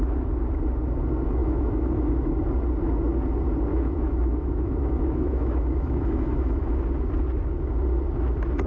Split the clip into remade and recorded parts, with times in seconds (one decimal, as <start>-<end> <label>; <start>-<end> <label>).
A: 0.0-1.4 recorded; 1.4-2.1 remade; 2.1-3.7 recorded; 3.7-6.8 remade; 6.8-8.7 recorded